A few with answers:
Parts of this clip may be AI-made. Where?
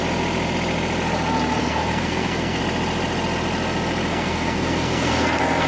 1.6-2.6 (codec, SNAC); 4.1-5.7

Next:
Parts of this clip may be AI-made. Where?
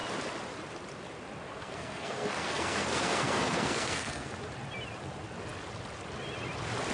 1.5-4.3 (codec, SNAC)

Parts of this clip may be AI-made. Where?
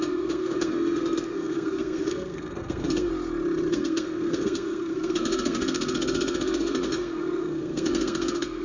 0.0-3.1 (codec, SNAC); 3.7-8.6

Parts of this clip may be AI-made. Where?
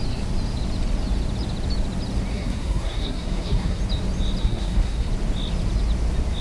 2.3-3.8 (codec, SNAC); 4.4-5.1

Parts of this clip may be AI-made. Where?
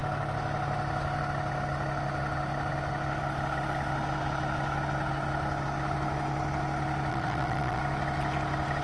7.1-7.8 (vocoder, Vocos)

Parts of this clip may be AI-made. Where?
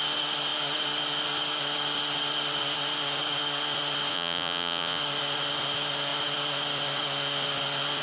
4.1-5.0 (vocoder, Vocos)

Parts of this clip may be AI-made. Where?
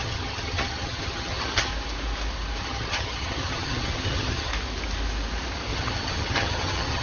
0.0-1.7 (vocoder, HiFi-GAN); 2.6-4.5; 5.7-7.0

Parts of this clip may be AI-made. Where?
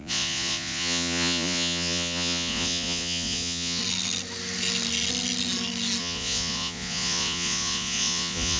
0.0-3.8 (vocoder, Vocos); 6.0-8.6